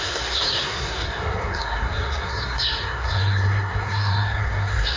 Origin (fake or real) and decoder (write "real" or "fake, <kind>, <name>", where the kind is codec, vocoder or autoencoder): fake, codec, SNAC